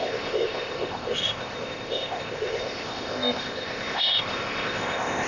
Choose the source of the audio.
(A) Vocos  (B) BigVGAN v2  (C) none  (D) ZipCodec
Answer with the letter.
D